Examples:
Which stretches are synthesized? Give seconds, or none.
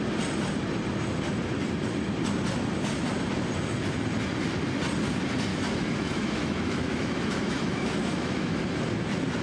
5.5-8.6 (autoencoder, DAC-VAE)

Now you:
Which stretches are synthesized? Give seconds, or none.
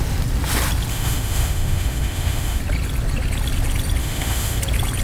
0.9-2.6 (autoencoder, DAC-VAE); 4.0-4.6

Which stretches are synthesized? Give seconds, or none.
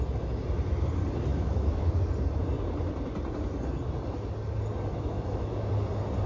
1.3-1.9 (autoencoder, DAC-VAE); 4.9-5.7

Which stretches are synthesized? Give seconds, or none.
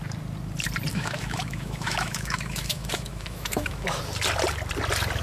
0.9-4.0 (autoencoder, DAC-VAE)